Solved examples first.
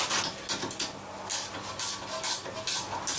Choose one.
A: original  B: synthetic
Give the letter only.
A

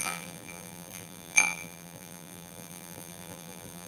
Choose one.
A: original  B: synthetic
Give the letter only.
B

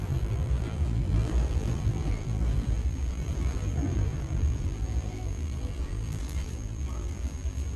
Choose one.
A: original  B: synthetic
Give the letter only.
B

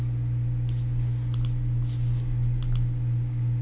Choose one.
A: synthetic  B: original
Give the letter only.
B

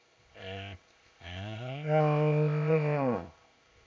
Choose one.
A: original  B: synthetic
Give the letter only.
B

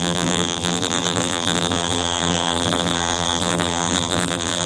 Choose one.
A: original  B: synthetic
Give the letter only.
B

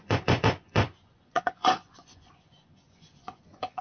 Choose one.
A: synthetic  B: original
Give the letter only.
A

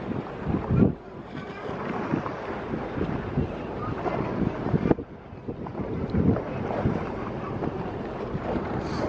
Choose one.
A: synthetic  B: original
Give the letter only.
B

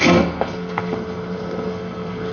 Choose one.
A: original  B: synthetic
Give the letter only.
B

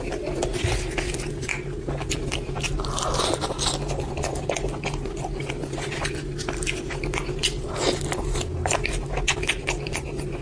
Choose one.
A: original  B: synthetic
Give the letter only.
A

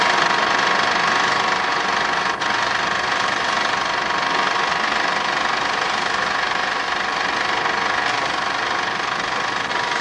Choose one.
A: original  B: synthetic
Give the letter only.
A